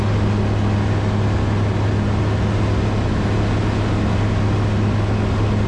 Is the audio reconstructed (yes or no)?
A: no